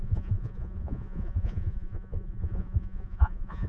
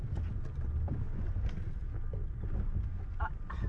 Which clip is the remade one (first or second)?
first